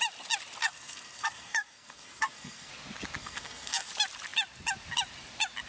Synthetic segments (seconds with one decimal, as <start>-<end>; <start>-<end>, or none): 0.6-2.7; 3.2-3.9

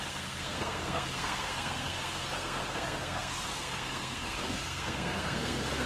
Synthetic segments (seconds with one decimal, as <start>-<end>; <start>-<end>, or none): 0.0-5.9

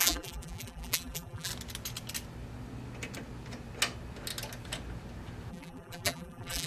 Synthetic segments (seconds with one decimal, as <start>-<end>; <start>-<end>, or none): 0.0-1.5; 5.5-6.7

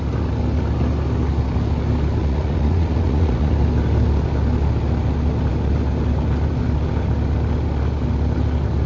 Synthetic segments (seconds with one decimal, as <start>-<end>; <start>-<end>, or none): 2.2-3.5

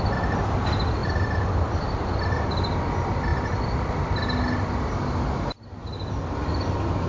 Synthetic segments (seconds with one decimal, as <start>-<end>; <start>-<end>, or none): 1.0-2.2

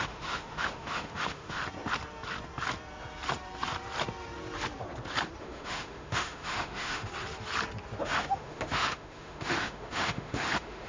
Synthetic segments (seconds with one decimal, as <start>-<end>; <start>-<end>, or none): 0.0-1.6; 5.4-7.1; 8.0-10.9

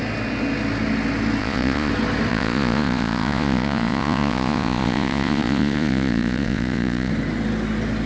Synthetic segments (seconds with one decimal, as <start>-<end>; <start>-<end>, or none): 1.4-1.9; 2.3-7.1

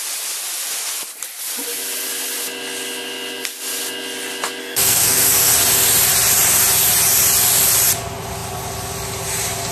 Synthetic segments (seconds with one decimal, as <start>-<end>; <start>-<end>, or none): 4.6-5.5